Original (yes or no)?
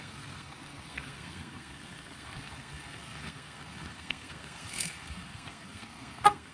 no